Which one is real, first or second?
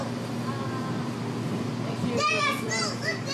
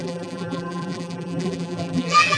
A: first